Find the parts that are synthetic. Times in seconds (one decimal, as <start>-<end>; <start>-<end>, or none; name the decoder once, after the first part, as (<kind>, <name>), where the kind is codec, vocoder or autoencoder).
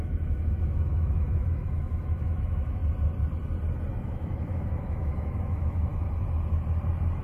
0.0-2.8 (autoencoder, DAC-VAE); 4.0-5.9